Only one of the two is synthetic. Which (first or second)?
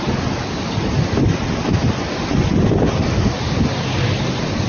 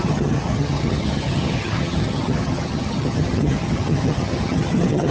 second